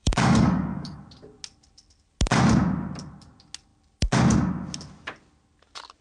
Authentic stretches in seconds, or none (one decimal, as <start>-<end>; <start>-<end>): 1.0-6.0